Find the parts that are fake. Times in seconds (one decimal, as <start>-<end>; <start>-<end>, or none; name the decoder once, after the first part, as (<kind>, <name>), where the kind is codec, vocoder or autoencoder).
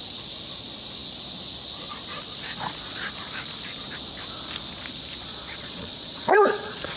5.3-7.0 (vocoder, Vocos)